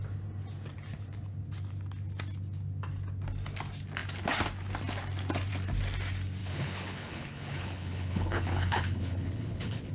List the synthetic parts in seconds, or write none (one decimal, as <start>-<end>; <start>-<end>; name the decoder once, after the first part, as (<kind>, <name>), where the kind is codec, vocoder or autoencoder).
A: 6.4-9.9 (codec, HILCodec)